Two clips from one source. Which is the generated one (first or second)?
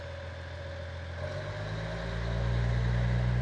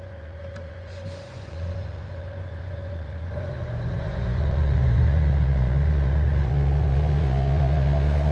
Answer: second